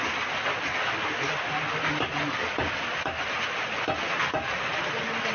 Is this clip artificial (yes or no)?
no